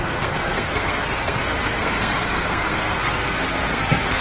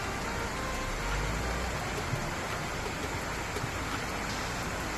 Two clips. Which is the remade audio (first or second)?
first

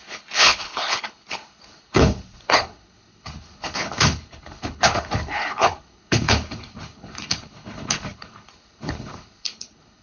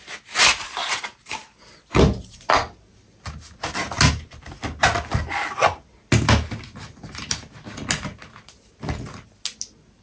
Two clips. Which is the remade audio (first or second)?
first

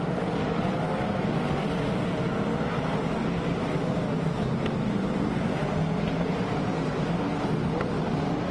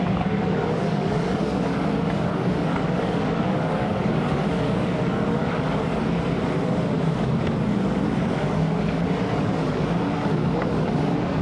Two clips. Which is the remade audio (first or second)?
second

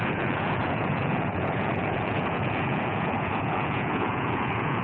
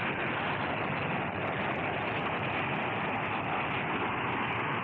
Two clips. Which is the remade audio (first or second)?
first